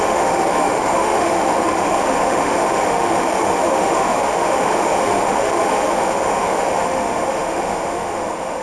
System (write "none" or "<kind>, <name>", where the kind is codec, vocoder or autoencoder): autoencoder, DAC-VAE